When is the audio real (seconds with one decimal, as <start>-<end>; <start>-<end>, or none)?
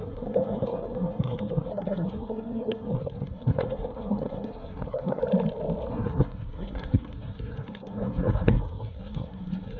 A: 5.2-5.9